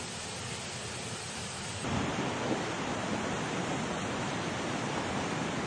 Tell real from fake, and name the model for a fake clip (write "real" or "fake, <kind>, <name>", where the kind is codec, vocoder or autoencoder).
real